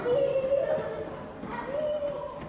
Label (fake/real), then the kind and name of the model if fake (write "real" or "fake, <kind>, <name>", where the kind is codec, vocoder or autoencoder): real